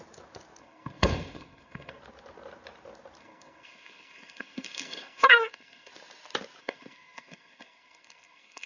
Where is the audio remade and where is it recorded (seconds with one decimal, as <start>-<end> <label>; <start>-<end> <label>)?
0.0-0.6 recorded; 0.6-2.0 remade; 2.0-3.2 recorded; 3.2-5.9 remade; 5.9-6.6 recorded; 6.6-8.7 remade